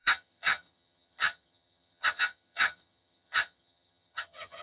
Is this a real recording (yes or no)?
no